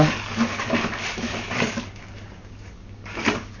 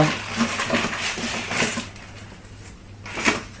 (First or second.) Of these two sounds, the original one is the second